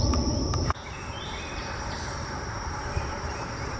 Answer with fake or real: fake